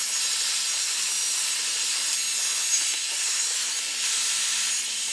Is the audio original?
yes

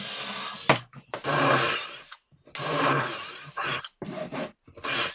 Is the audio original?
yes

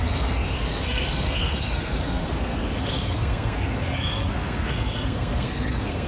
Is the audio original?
no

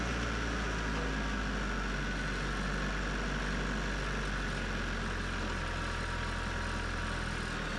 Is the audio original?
yes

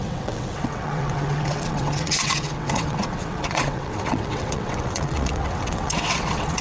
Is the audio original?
no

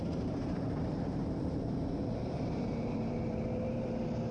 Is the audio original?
no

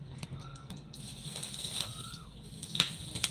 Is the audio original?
no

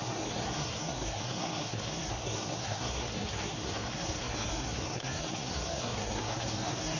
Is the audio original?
no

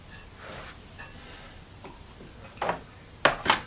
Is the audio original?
yes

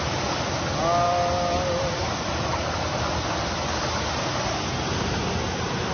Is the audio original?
yes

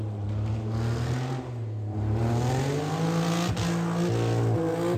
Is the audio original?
yes